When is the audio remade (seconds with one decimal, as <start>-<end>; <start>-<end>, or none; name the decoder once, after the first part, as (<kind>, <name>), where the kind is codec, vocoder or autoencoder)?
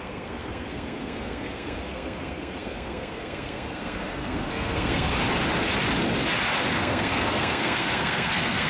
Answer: 0.0-5.1 (codec, SNAC); 6.7-8.7